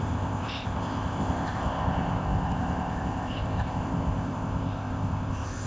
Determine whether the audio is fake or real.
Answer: fake